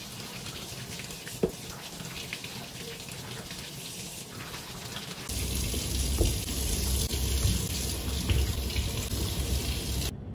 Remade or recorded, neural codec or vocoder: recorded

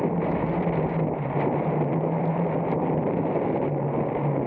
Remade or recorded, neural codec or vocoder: recorded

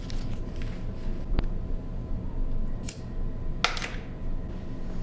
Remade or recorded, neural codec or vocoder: recorded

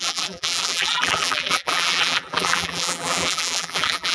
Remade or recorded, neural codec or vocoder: remade, vocoder, BigVGAN v2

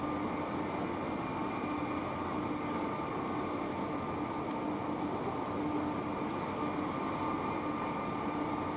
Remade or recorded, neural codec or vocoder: recorded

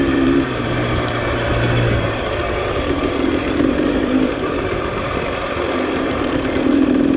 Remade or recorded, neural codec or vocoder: remade, vocoder, BigVGAN v2